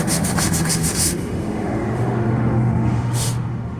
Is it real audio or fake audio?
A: fake